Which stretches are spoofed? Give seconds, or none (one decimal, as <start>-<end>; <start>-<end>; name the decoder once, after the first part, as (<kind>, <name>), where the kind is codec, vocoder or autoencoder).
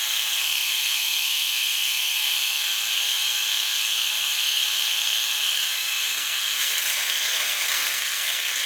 0.0-8.7 (codec, SNAC)